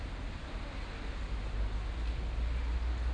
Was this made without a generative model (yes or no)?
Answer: yes